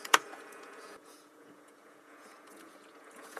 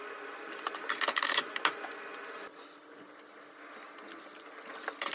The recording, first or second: second